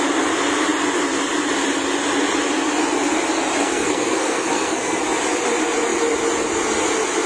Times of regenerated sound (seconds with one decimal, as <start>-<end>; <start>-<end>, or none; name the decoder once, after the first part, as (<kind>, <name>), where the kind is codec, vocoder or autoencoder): 3.6-5.0 (codec, SNAC)